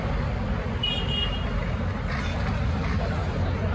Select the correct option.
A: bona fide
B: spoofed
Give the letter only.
A